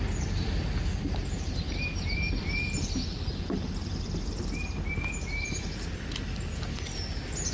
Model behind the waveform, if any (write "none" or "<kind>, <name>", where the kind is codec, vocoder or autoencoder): none